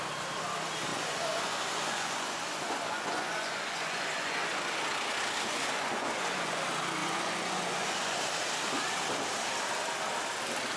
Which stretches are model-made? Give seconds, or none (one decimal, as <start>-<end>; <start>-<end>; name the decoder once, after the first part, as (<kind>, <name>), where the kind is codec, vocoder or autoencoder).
0.9-4.6 (vocoder, Vocos); 5.5-6.6; 7.0-8.2